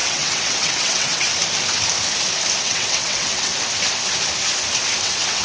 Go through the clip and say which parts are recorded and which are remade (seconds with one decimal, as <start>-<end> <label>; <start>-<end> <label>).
0.0-1.3 remade; 1.3-2.6 recorded; 2.6-3.5 remade; 3.5-5.0 recorded; 5.0-5.4 remade